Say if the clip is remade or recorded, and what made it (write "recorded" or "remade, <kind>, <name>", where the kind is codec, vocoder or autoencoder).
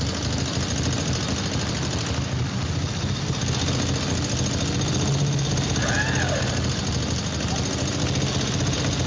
recorded